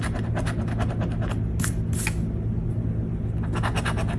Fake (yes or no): no